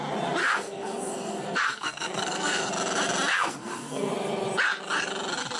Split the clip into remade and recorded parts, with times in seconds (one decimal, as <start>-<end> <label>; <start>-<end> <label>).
0.0-0.4 recorded; 0.4-2.7 remade; 2.7-3.3 recorded; 3.3-4.1 remade; 4.1-5.6 recorded